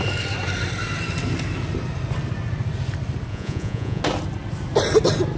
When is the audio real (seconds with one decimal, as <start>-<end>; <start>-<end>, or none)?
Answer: 0.0-3.3; 4.0-5.4